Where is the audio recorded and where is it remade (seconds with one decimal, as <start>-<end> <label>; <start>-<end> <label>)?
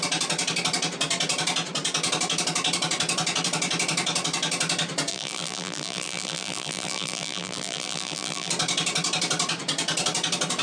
0.0-5.1 recorded; 5.1-8.5 remade; 8.5-10.6 recorded